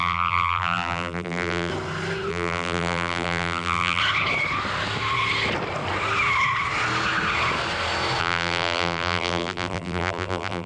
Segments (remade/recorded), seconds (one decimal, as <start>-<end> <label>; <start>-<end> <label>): 0.0-1.7 remade; 1.7-2.3 recorded; 2.3-4.0 remade; 4.0-8.2 recorded; 8.2-10.7 remade